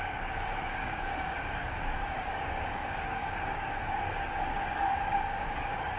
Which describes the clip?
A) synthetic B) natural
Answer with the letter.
A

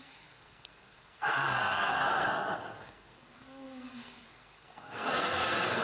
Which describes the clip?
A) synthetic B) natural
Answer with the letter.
A